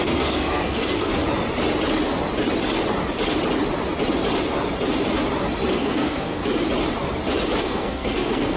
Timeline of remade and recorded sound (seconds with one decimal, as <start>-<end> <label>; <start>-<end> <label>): 0.0-1.1 remade; 1.1-5.7 recorded; 5.7-6.4 remade; 6.4-7.6 recorded; 7.6-8.6 remade